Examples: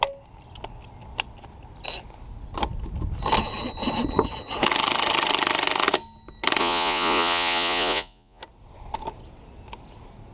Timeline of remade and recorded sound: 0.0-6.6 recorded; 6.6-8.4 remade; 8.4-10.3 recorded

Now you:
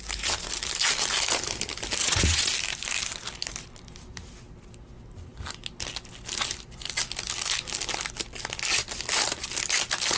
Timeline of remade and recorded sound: 0.0-2.0 recorded; 2.0-2.5 remade; 2.5-10.2 recorded

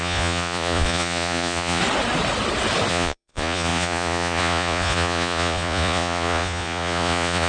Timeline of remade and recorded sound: 0.0-1.8 remade; 1.8-2.9 recorded; 2.9-7.5 remade

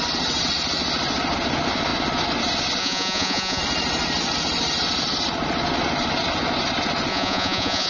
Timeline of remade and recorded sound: 0.0-2.8 recorded; 2.8-3.6 remade; 3.6-7.1 recorded; 7.1-7.9 remade

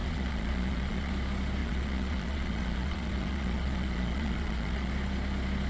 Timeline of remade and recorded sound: 0.0-1.1 remade; 1.1-1.6 recorded; 1.6-4.9 remade; 4.9-5.7 recorded

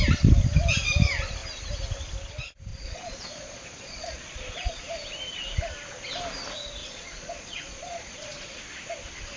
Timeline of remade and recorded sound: 0.0-2.7 recorded; 2.7-4.8 remade; 4.8-6.8 recorded; 6.8-8.6 remade; 8.6-9.4 recorded